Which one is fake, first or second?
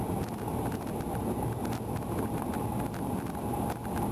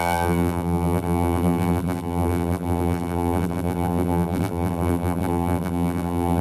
second